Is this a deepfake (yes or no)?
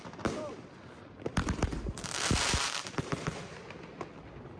no